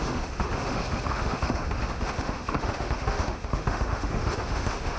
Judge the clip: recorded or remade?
remade